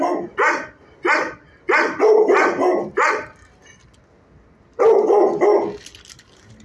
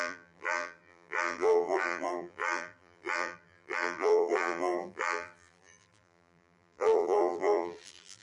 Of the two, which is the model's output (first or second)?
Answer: second